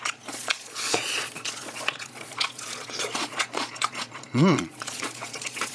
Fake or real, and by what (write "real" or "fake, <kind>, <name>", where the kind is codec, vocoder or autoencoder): fake, vocoder, Vocos